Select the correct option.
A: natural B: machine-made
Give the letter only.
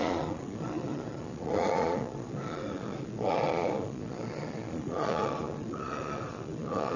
B